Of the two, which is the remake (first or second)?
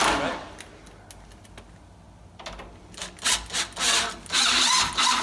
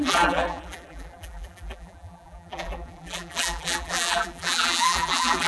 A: second